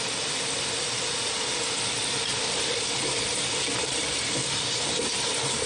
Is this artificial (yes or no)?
no